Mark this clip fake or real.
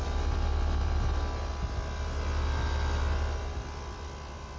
real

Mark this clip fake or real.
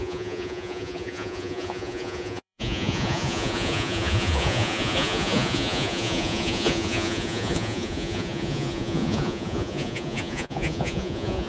fake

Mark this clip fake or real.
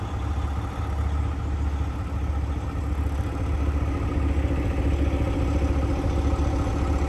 real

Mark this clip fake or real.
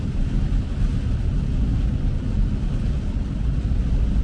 real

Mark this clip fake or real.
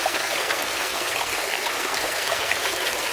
fake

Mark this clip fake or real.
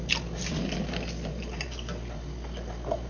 real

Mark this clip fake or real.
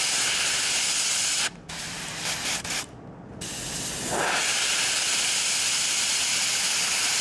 real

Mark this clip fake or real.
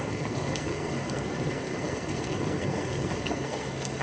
fake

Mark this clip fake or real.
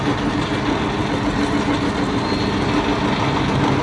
real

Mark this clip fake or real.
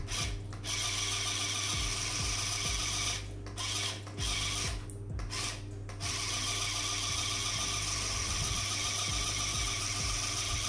real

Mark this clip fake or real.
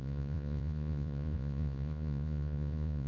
fake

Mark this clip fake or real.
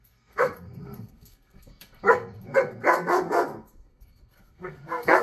fake